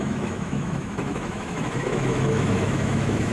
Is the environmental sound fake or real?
fake